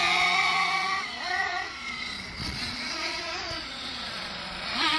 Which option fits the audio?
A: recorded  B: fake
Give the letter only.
B